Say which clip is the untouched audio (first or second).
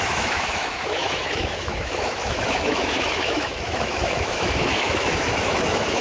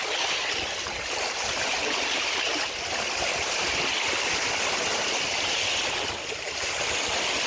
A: second